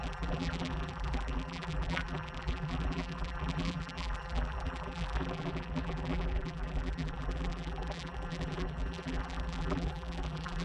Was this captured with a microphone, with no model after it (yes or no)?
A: no